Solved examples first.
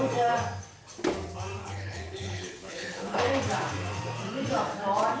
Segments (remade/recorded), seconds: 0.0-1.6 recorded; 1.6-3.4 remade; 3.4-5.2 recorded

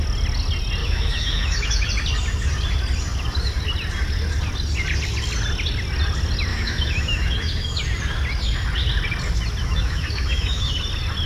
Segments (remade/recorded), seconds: 0.0-0.8 recorded; 0.8-1.9 remade; 1.9-6.5 recorded; 6.5-7.8 remade; 7.8-9.6 recorded; 9.6-10.7 remade; 10.7-11.3 recorded

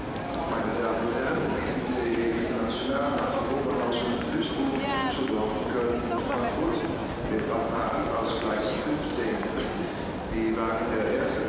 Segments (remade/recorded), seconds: 0.0-0.7 recorded; 0.7-3.7 remade; 3.7-11.5 recorded

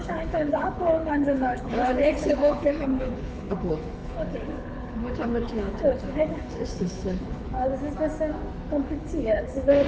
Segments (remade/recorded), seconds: 0.0-7.7 remade; 7.7-8.7 recorded; 8.7-9.9 remade